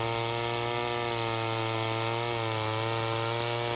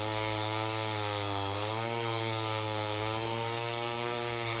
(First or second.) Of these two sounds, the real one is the first